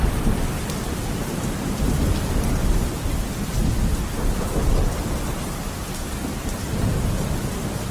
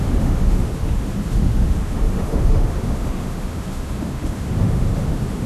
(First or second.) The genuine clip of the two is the first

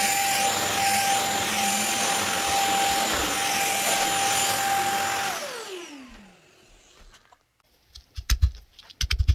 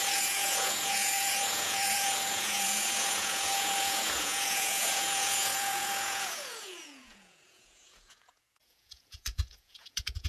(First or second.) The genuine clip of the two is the first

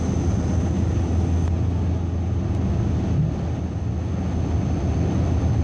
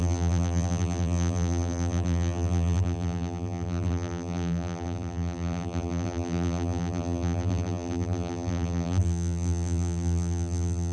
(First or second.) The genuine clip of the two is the first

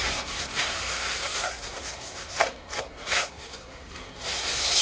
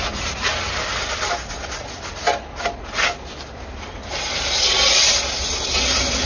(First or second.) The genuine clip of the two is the second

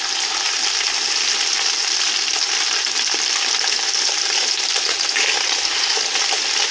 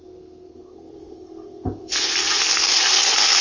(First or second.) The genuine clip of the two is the first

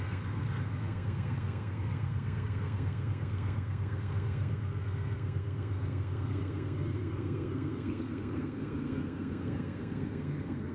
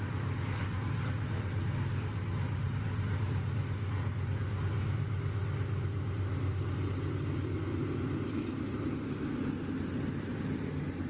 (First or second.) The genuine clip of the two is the second